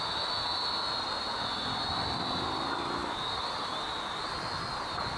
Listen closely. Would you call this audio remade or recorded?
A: recorded